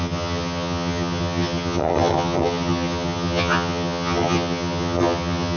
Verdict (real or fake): fake